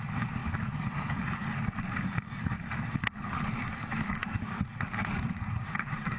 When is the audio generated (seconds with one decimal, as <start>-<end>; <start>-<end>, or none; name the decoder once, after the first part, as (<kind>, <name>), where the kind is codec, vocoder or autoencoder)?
none